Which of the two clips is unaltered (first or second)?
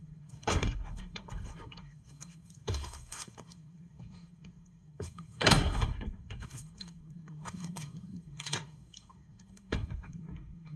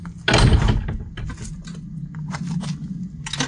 second